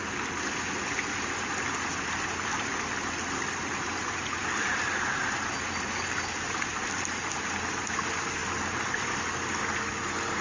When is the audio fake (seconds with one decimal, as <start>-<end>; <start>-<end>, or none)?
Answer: none